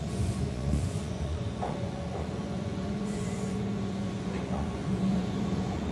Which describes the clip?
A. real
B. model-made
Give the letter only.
B